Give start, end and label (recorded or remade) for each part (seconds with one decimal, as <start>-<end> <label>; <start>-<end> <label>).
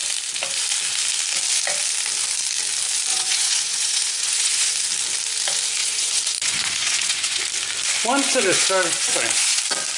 0.0-3.1 recorded; 3.1-4.7 remade; 4.7-5.8 recorded; 5.8-7.4 remade; 7.4-8.3 recorded; 8.3-9.6 remade; 9.6-10.0 recorded